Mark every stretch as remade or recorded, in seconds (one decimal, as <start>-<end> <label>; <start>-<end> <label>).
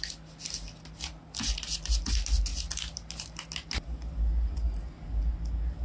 0.0-5.8 recorded